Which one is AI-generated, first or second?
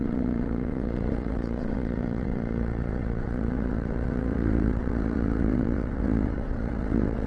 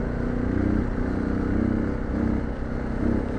first